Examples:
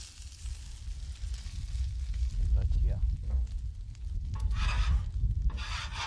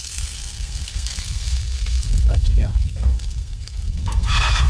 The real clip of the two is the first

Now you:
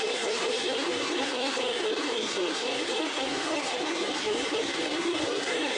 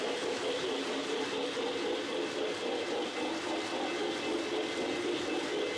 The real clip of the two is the second